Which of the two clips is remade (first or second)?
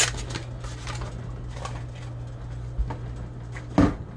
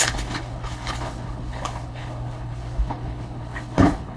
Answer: second